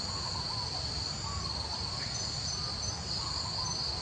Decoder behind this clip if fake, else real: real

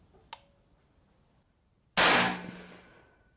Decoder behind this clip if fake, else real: real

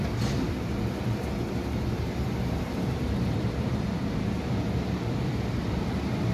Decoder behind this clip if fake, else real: fake, vocoder, BigVGAN v2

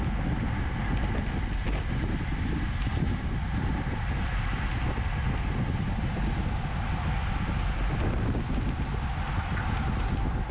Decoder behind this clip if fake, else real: real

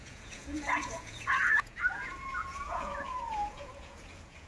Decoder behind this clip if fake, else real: fake, vocoder, Vocos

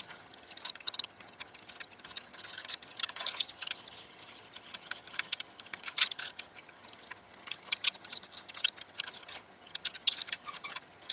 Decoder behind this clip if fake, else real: fake, vocoder, HiFi-GAN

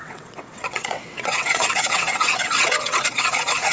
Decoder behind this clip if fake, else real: fake, vocoder, WaveNeXt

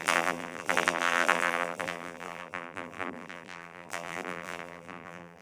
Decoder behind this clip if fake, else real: fake, vocoder, BigVGAN v2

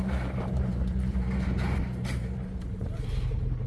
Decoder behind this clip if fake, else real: fake, vocoder, BigVGAN v2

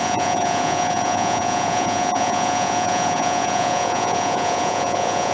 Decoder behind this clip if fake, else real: fake, vocoder, Vocos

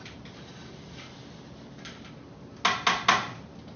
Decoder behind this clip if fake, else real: real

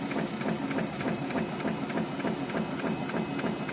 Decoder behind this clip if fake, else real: real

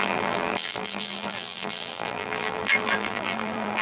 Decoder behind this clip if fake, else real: fake, vocoder, BigVGAN v2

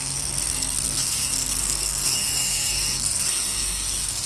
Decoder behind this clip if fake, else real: fake, codec, SNAC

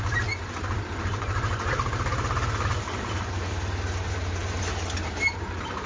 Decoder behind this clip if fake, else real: fake, vocoder, BigVGAN v2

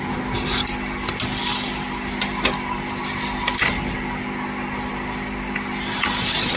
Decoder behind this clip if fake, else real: real